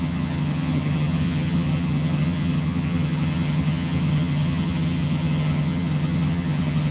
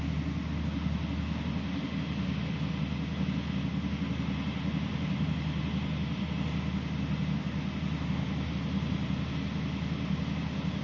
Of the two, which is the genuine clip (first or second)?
second